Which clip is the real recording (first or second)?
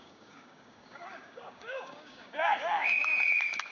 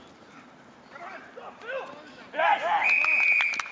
second